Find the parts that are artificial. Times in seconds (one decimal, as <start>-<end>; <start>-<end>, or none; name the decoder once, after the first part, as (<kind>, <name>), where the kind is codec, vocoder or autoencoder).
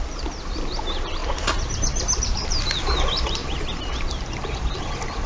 1.2-2.6 (vocoder, BigVGAN v2); 3.4-4.8